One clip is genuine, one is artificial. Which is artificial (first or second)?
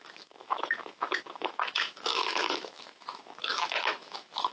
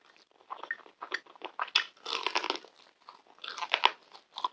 first